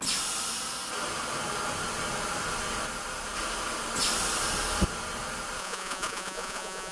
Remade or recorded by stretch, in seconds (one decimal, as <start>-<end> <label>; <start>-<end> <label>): 0.0-5.6 recorded; 5.6-6.9 remade